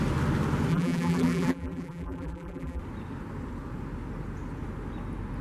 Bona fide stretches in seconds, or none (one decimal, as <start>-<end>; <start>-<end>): 0.0-0.7; 2.8-5.4